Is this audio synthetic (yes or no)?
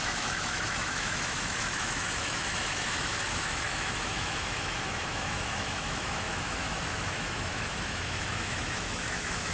yes